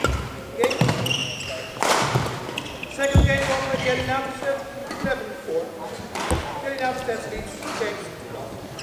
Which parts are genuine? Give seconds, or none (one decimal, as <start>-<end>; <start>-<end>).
0.0-4.8; 5.5-8.8